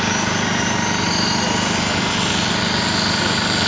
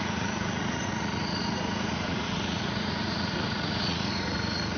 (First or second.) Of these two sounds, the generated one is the second